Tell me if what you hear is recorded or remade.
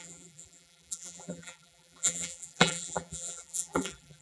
remade